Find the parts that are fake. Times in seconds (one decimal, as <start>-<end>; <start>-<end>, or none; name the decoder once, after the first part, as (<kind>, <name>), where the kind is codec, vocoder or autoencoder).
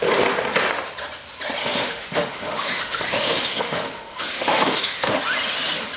1.6-5.2 (autoencoder, DAC-VAE)